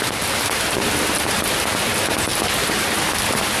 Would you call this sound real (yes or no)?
yes